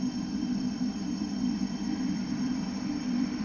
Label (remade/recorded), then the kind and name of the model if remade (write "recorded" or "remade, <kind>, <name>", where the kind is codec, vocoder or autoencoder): remade, vocoder, BigVGAN v2